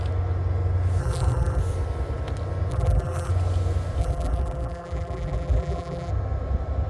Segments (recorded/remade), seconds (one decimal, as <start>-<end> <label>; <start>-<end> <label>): 0.0-1.0 recorded; 1.0-1.6 remade; 1.6-2.7 recorded; 2.7-3.3 remade; 3.3-4.0 recorded; 4.0-6.1 remade; 6.1-6.9 recorded